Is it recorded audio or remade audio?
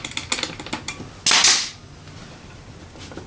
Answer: recorded